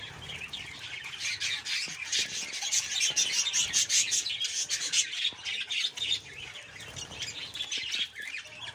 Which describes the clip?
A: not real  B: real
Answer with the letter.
B